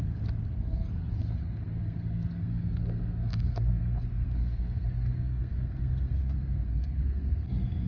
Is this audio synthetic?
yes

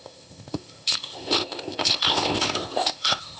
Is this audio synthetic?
yes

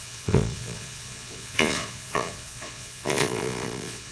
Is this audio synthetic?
yes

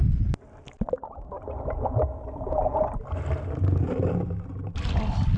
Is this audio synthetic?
no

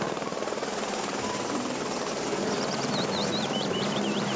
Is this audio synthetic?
yes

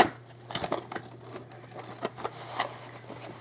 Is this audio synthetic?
no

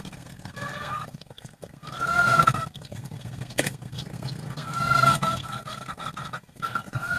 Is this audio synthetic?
yes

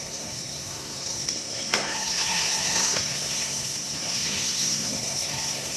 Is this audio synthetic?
yes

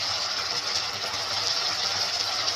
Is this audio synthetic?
no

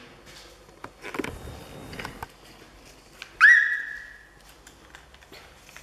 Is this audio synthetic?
no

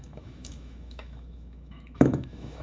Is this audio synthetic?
yes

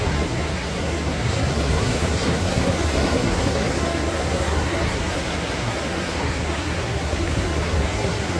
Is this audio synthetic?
yes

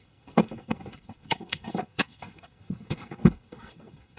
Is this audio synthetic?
yes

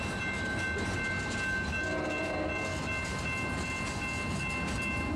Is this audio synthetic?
no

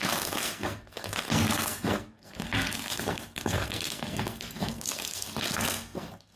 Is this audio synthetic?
yes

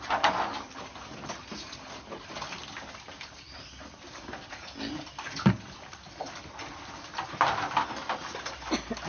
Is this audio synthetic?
no